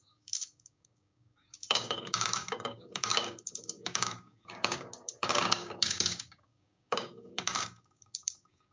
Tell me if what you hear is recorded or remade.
remade